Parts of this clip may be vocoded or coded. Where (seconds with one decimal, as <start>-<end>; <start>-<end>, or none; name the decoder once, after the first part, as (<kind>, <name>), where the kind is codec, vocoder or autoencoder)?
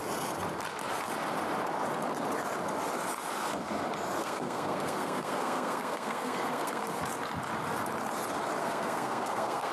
4.2-6.8 (codec, SNAC); 8.6-9.7